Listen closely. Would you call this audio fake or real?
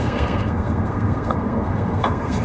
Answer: fake